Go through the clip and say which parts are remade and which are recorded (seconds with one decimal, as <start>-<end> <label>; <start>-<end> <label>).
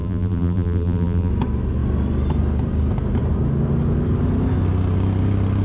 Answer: 0.0-1.3 remade; 1.3-5.6 recorded